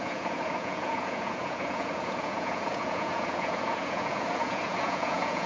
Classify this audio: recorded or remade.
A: remade